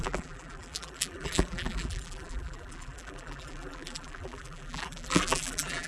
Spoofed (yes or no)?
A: yes